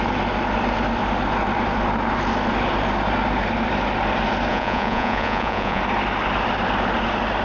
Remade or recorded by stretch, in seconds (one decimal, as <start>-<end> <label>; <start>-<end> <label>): 0.0-4.5 recorded; 4.5-5.8 remade; 5.8-7.4 recorded